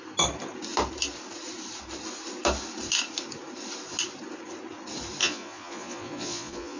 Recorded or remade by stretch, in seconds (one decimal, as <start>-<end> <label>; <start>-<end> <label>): 0.0-5.2 recorded; 5.2-6.8 remade